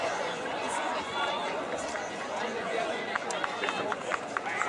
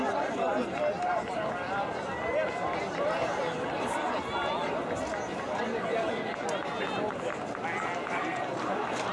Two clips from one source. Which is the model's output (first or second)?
first